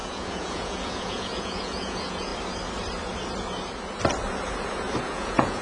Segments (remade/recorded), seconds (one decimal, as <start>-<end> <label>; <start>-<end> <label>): 0.0-2.3 remade; 2.3-5.0 recorded; 5.0-5.6 remade